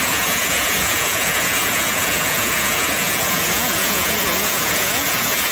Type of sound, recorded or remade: remade